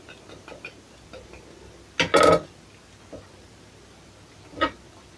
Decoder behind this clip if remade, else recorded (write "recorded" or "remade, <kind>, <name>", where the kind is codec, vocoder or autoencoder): recorded